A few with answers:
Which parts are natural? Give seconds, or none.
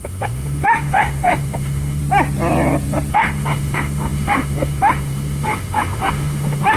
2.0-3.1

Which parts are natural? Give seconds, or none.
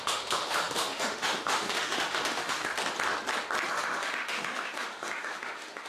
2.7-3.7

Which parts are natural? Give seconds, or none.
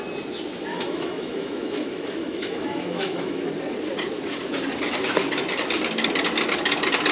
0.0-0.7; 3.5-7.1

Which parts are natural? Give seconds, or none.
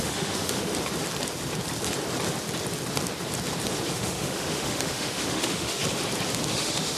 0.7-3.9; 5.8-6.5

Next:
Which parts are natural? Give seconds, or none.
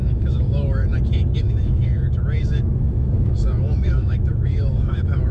0.8-1.4; 1.9-2.4